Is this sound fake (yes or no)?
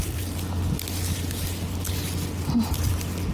no